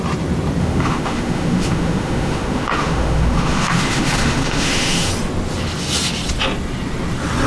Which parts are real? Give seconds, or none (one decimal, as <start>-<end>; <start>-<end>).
0.0-0.6; 5.1-7.5